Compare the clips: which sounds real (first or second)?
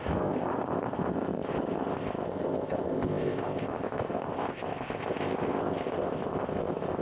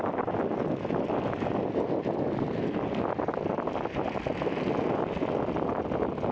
second